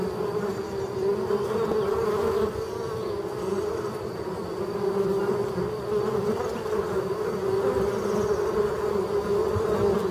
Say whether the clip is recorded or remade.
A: recorded